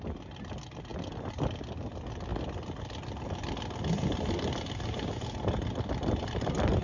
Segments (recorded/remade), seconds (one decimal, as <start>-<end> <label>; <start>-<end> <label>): 0.0-6.8 recorded